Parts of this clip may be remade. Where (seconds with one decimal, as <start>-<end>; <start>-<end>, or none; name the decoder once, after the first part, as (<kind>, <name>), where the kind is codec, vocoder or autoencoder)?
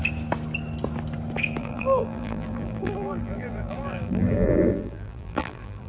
1.6-5.9 (vocoder, BigVGAN v2)